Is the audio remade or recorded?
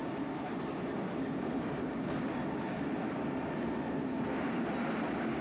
recorded